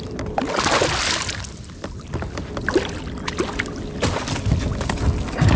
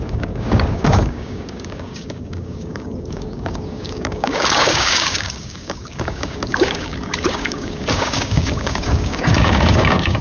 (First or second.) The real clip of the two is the first